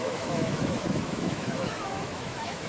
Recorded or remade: remade